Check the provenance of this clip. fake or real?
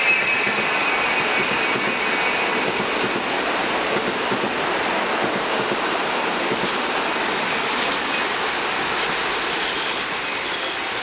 real